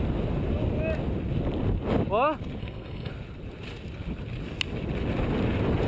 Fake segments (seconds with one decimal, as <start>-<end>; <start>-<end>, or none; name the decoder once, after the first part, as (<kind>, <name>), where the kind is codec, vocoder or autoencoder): 2.6-3.1 (codec, SNAC)